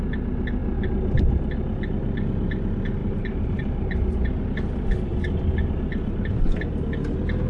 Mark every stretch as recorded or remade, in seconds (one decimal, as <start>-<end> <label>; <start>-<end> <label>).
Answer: 0.0-3.0 recorded; 3.0-4.4 remade; 4.4-7.5 recorded